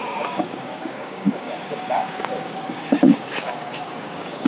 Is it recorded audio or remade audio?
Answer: remade